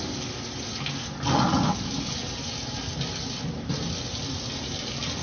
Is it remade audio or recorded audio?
recorded